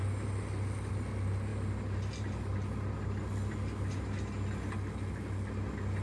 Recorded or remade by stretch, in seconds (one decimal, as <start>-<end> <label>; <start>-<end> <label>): 0.0-6.0 recorded